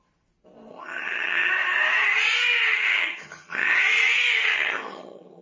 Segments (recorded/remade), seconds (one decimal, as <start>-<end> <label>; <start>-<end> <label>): 0.0-0.7 recorded; 0.7-1.5 remade; 1.5-2.7 recorded; 2.7-3.8 remade; 3.8-4.4 recorded; 4.4-5.4 remade